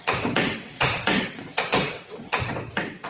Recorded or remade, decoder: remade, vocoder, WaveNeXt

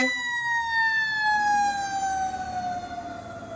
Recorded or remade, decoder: recorded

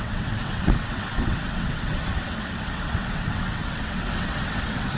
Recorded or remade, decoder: remade, vocoder, WaveNeXt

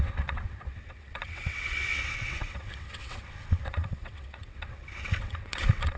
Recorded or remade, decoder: remade, vocoder, WaveNeXt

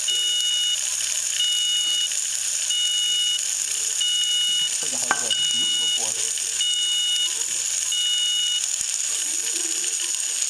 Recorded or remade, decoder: recorded